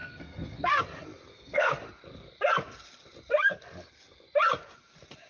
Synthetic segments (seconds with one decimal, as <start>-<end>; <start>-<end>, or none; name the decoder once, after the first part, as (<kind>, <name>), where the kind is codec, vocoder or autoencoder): 0.0-0.8 (codec, SNAC); 1.3-1.8